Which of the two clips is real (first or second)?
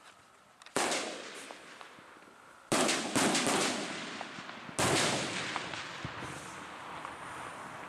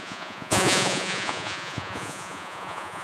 first